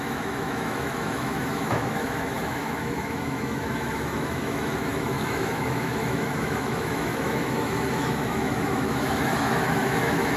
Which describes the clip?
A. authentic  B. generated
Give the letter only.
B